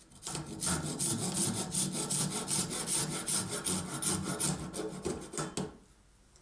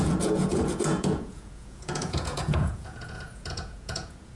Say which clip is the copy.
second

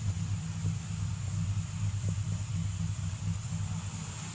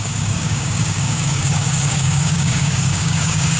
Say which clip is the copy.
second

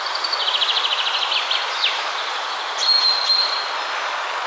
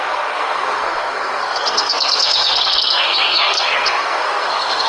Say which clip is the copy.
second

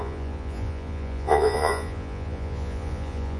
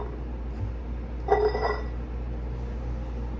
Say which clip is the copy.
first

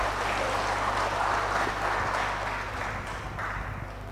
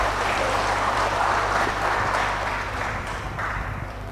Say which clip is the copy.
second